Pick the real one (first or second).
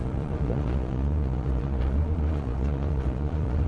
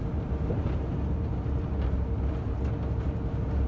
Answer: second